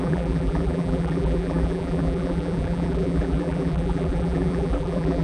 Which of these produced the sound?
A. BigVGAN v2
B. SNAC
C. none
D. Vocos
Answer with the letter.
A